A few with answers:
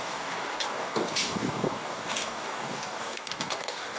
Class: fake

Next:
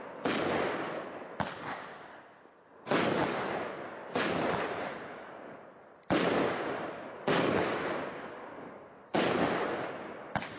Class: real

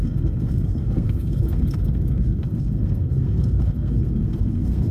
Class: fake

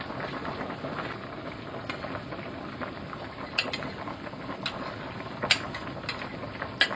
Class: real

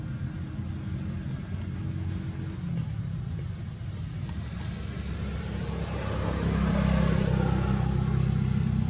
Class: real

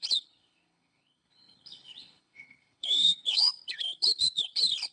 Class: fake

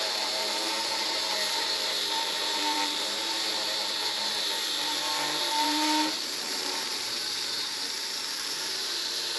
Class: fake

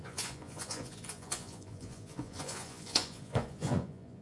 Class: fake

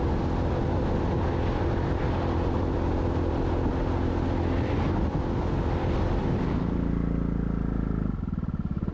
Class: real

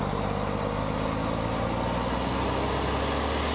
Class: real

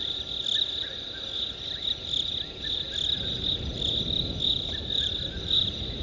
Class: real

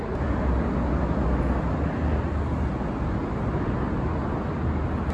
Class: real